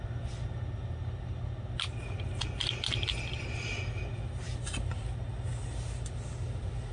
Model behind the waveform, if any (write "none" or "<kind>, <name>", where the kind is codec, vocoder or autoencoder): none